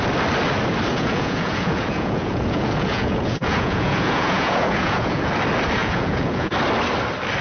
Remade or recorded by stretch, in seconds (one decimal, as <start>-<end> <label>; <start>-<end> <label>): 0.0-0.9 recorded; 0.9-5.3 remade; 5.3-5.8 recorded; 5.8-6.5 remade; 6.5-7.4 recorded